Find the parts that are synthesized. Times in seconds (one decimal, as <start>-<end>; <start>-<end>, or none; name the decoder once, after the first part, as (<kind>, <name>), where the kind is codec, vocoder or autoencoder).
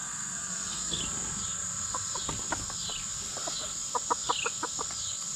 0.0-1.0 (codec, SNAC)